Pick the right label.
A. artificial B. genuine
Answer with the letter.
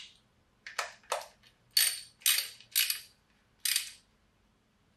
B